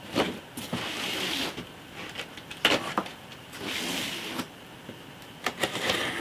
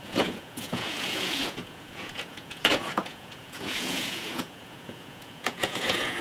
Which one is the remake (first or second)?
second